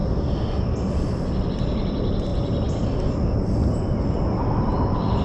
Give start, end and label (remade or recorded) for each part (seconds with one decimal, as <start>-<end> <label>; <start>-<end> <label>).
0.0-5.2 recorded